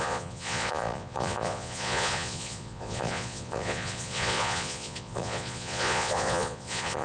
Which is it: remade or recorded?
remade